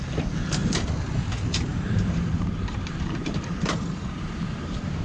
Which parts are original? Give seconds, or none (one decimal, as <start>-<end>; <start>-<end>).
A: 0.0-1.7; 4.4-5.0

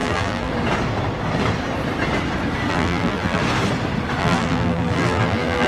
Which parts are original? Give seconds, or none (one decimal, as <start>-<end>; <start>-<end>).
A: 0.5-2.7; 3.4-4.2

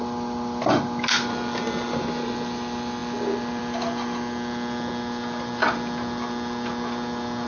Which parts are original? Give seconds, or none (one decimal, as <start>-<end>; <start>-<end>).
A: 0.0-7.5

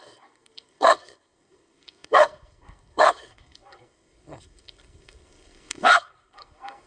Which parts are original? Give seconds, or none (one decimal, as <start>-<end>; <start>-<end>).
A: none